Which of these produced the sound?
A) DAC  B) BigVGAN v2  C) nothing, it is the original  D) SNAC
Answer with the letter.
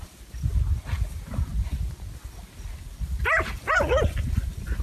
C